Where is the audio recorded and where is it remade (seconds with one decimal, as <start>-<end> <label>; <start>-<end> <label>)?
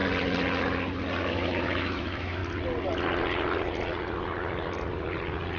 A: 0.0-1.3 recorded; 1.3-2.4 remade; 2.4-5.6 recorded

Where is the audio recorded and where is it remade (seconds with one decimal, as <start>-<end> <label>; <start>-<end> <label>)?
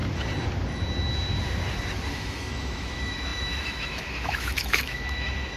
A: 0.0-2.1 recorded; 2.1-5.6 remade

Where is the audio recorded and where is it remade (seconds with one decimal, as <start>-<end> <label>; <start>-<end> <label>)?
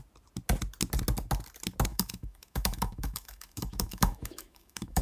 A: 0.0-1.9 recorded; 1.9-5.0 remade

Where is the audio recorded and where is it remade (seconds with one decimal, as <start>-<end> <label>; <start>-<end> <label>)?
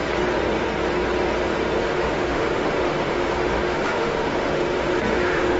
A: 0.0-1.8 recorded; 1.8-5.6 remade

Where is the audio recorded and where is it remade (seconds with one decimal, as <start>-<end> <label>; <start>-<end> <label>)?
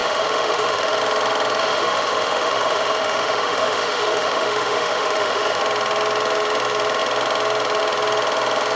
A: 0.0-1.0 remade; 1.0-1.6 recorded; 1.6-5.6 remade; 5.6-8.8 recorded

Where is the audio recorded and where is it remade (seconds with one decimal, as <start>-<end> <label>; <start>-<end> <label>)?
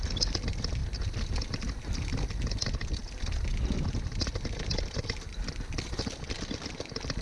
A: 0.0-7.2 recorded